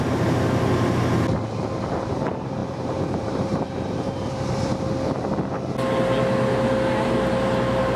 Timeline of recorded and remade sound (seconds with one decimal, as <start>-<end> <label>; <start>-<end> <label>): 0.0-2.6 recorded; 2.6-4.8 remade; 4.8-8.0 recorded